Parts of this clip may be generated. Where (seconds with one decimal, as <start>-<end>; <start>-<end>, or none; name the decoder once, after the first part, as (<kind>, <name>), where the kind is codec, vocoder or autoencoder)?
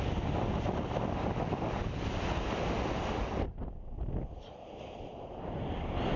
none